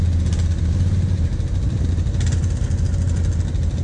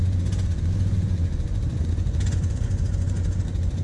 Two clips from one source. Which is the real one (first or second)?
first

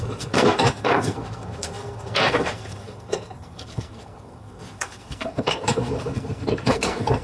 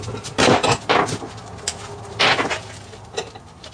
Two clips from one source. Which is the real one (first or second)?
second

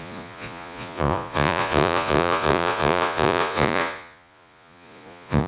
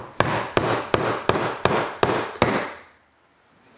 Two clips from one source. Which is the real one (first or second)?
second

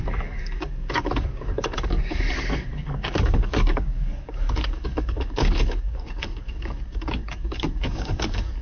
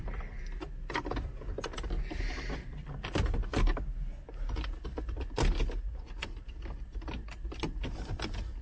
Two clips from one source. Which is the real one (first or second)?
second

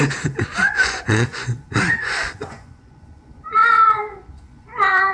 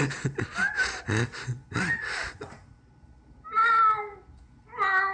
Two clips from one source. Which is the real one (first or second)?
second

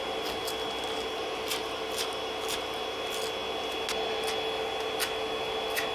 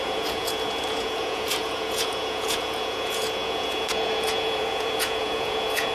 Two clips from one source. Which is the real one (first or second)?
first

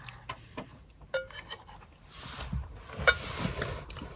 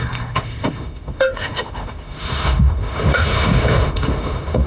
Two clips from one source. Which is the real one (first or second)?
first